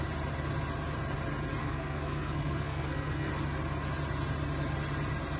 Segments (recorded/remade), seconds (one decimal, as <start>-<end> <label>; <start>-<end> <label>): 0.0-1.6 recorded; 1.6-3.3 remade; 3.3-5.4 recorded

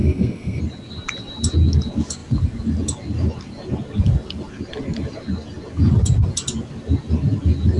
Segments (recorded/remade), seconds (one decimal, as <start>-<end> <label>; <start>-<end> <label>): 0.0-0.6 remade; 0.6-7.8 recorded

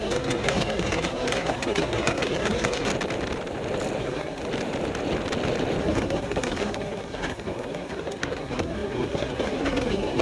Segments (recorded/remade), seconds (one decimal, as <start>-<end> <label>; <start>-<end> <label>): 0.0-2.9 remade; 2.9-4.0 recorded; 4.0-4.4 remade; 4.4-5.8 recorded; 5.8-10.2 remade

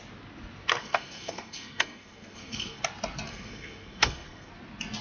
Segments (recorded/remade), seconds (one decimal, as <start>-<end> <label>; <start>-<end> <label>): 0.0-0.8 recorded; 0.8-2.8 remade; 2.8-3.3 recorded; 3.3-4.5 remade; 4.5-5.0 recorded

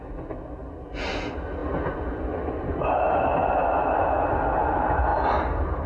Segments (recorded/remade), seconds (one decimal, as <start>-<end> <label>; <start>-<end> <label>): 0.0-5.9 recorded

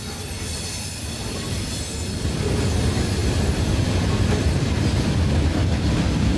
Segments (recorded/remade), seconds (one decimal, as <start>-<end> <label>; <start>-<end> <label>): 0.0-6.4 recorded

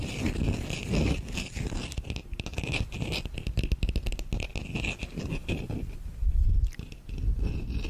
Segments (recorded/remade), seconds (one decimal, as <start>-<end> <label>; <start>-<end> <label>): 0.0-7.9 recorded